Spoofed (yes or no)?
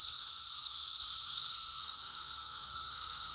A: yes